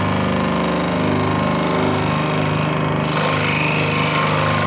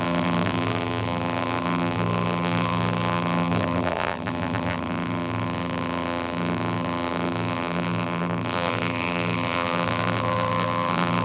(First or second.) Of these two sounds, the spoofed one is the second